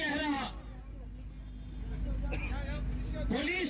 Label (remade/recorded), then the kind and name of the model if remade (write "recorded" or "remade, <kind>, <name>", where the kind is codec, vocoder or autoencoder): recorded